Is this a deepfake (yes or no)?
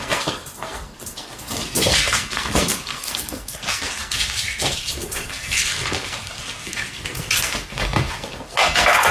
yes